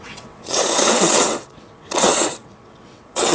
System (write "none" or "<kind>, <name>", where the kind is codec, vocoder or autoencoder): vocoder, WaveNeXt